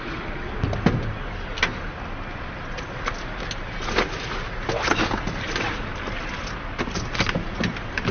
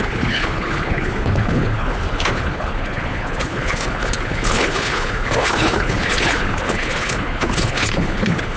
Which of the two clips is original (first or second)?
first